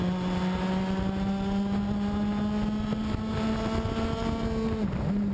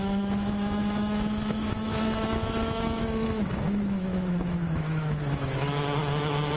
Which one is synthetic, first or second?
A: second